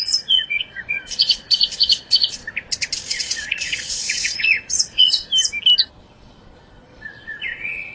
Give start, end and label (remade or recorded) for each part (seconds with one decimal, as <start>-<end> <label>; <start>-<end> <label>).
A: 0.0-2.4 remade; 2.4-3.1 recorded; 3.1-5.2 remade; 5.2-6.0 recorded; 6.0-7.9 remade